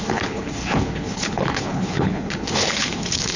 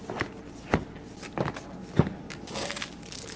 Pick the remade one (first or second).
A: first